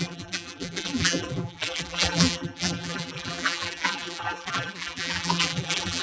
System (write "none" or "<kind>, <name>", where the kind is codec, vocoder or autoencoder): vocoder, BigVGAN v2